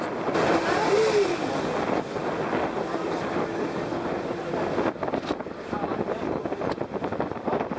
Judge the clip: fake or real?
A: real